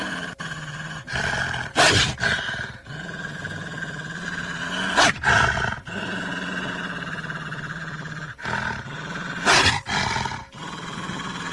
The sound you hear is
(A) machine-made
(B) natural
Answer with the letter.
B